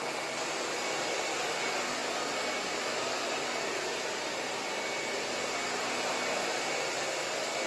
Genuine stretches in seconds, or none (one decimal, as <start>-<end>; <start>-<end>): 0.0-7.7